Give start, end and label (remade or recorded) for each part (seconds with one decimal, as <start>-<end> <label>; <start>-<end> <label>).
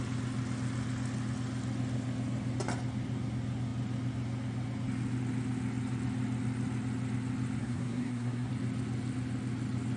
0.0-7.6 recorded; 7.6-8.5 remade; 8.5-10.0 recorded